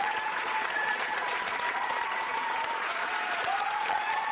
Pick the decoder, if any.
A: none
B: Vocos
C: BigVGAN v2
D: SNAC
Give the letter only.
B